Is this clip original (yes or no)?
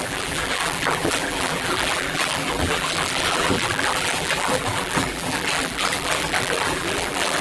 no